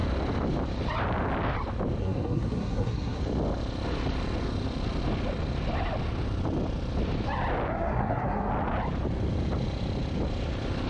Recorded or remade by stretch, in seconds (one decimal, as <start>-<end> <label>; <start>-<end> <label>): 0.0-2.0 recorded; 2.0-3.2 remade; 3.2-7.7 recorded; 7.7-8.5 remade; 8.5-10.9 recorded